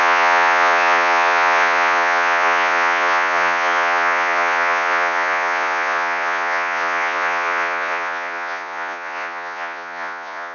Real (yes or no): no